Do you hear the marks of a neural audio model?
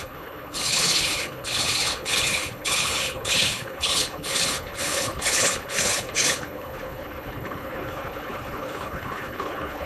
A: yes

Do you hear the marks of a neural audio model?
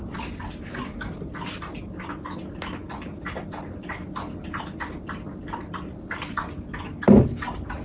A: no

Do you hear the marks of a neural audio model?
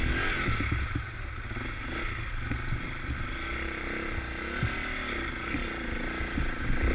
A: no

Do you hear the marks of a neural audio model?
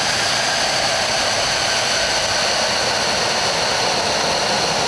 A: no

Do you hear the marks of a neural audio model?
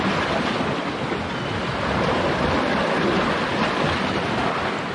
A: no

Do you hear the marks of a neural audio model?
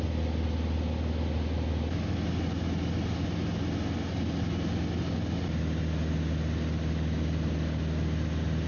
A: no